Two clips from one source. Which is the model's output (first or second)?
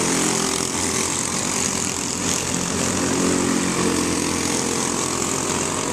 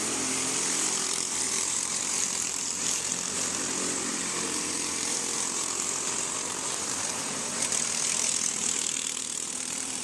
second